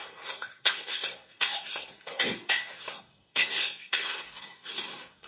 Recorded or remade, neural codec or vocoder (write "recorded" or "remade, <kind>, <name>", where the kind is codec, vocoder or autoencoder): remade, codec, SNAC